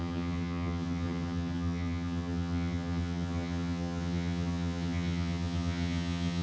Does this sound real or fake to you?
fake